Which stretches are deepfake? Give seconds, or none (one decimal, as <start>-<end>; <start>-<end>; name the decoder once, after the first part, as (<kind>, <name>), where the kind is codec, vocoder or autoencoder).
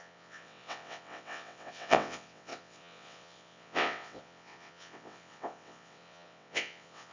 0.0-7.1 (vocoder, WaveNeXt)